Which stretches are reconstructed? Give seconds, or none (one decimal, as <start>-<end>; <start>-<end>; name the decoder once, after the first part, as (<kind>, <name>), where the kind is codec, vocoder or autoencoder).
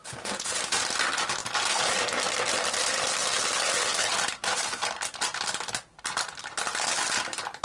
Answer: 0.0-0.5 (vocoder, Vocos)